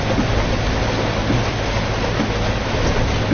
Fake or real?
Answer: real